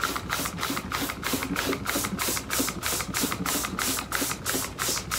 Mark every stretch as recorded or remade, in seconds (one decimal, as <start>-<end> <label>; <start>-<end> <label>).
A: 0.0-5.2 recorded